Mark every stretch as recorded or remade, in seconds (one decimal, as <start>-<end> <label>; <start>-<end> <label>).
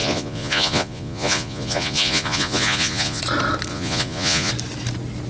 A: 0.0-3.2 remade; 3.2-3.7 recorded; 3.7-4.5 remade; 4.5-5.3 recorded